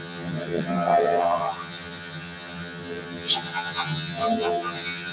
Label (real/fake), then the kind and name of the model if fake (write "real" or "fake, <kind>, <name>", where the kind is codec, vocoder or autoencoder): fake, vocoder, HiFi-GAN